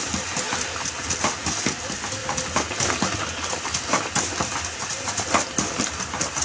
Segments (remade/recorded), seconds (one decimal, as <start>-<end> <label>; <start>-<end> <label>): 0.0-6.4 recorded